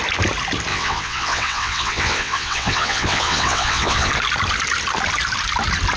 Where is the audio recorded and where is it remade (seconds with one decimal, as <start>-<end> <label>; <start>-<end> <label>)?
0.0-0.7 recorded; 0.7-4.1 remade; 4.1-6.0 recorded